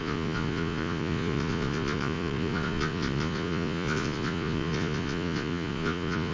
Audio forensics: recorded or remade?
remade